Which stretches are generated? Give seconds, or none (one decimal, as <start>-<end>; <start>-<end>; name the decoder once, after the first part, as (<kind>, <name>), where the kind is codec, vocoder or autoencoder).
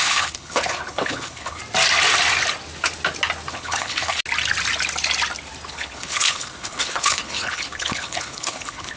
0.0-1.6 (codec, HILCodec); 3.5-4.2; 5.7-9.0